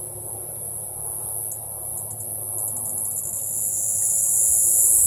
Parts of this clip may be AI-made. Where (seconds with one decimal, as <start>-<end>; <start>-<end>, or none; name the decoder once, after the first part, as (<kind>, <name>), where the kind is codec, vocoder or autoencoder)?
none